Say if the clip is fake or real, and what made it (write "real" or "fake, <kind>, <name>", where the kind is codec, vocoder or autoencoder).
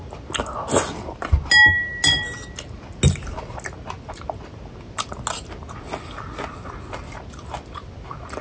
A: real